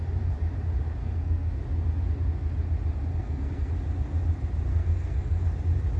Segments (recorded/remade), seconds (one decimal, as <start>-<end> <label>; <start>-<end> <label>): 0.0-1.0 recorded; 1.0-1.5 remade; 1.5-3.2 recorded; 3.2-3.7 remade; 3.7-4.7 recorded; 4.7-5.5 remade; 5.5-6.0 recorded